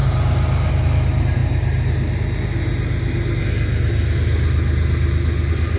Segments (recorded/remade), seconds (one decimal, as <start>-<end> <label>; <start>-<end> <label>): 0.0-5.8 recorded